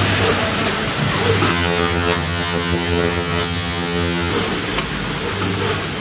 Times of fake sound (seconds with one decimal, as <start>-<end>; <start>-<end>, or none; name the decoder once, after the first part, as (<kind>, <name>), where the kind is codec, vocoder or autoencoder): 1.5-4.3 (vocoder, HiFi-GAN)